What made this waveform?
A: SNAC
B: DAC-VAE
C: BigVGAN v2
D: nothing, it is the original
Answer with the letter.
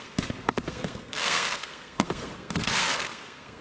A